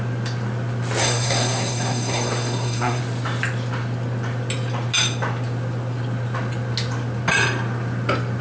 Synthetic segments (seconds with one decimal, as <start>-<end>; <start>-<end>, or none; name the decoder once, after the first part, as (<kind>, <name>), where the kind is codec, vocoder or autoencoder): 1.0-3.0 (codec, SNAC)